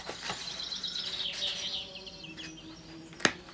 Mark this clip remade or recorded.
recorded